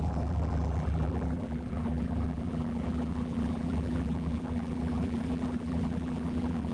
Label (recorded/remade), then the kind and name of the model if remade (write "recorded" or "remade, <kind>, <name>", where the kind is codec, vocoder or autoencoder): remade, vocoder, BigVGAN v2